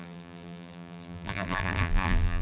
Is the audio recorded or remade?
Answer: remade